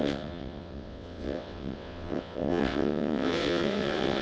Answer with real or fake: fake